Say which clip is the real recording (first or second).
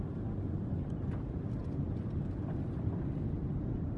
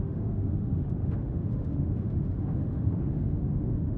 first